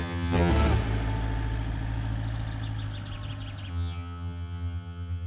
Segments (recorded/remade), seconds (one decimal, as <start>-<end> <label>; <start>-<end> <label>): 0.0-0.5 remade; 0.5-3.7 recorded; 3.7-5.3 remade